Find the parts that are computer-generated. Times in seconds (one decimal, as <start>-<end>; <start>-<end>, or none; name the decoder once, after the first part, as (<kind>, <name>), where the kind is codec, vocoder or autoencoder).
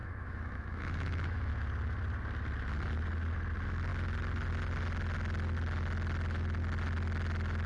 0.0-1.5 (autoencoder, DAC-VAE)